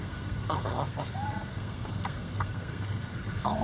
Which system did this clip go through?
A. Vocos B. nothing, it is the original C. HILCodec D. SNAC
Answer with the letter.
D